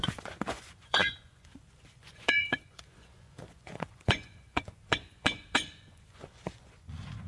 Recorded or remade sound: remade